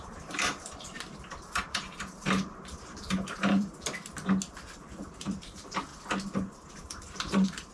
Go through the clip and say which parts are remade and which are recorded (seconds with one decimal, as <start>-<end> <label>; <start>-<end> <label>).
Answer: 0.0-0.9 remade; 0.9-1.5 recorded; 1.5-3.7 remade; 3.7-5.1 recorded; 5.1-5.9 remade; 5.9-6.7 recorded; 6.7-7.7 remade